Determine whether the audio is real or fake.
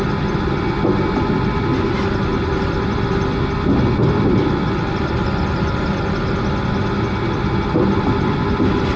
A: real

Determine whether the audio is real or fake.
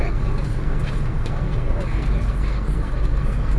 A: fake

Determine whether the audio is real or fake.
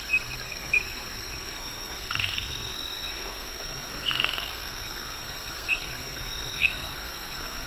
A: fake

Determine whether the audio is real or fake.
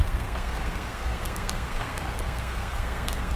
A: fake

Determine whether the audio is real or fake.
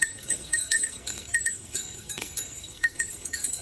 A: fake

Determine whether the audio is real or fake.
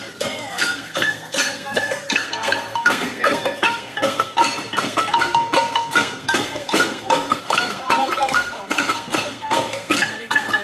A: fake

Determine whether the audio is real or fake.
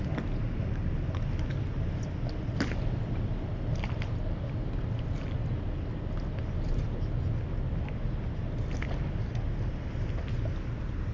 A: real